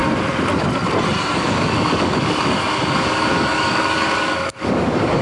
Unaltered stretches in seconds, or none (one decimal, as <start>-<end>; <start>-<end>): 0.0-1.3